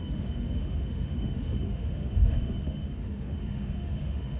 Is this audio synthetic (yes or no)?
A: yes